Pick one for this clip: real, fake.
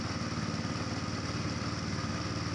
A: real